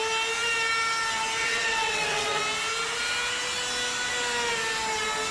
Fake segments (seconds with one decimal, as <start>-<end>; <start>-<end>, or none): 1.4-2.4